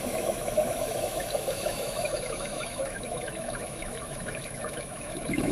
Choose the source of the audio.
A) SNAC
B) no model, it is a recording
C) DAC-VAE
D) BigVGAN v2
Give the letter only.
C